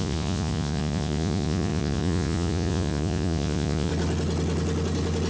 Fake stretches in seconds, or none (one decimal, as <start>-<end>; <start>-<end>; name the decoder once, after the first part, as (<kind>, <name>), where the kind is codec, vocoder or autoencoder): 0.0-3.9 (vocoder, Vocos)